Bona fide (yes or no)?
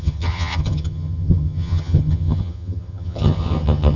no